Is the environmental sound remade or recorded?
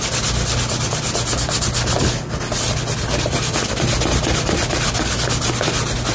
recorded